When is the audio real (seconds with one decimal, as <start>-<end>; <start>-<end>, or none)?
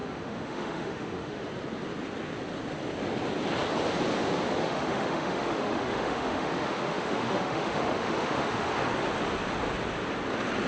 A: 1.4-4.6; 8.8-10.7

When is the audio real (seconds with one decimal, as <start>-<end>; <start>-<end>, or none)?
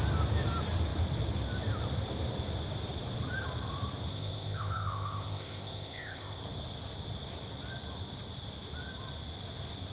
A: 0.0-4.1; 6.4-9.9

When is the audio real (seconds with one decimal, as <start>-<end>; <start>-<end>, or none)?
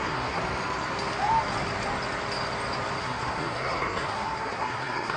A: 0.4-3.0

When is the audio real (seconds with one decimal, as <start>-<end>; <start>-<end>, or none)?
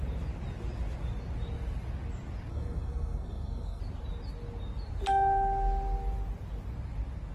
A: 0.0-2.5; 3.8-7.3